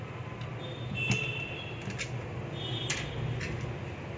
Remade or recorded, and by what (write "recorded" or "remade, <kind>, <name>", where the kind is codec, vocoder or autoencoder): recorded